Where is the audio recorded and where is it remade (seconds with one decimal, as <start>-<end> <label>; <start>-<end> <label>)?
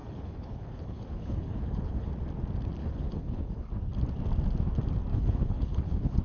0.0-2.1 remade; 2.1-2.8 recorded; 2.8-3.7 remade; 3.7-5.1 recorded; 5.1-6.2 remade